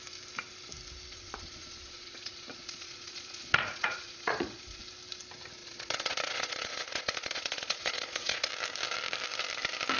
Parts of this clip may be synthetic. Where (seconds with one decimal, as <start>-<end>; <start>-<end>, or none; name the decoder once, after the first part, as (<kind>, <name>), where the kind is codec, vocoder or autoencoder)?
1.1-4.8 (vocoder, Vocos); 5.6-8.5